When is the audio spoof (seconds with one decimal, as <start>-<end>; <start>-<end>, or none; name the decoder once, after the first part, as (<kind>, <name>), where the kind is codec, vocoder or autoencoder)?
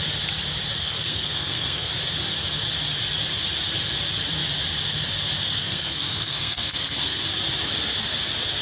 0.8-1.9 (codec, SNAC); 5.6-7.2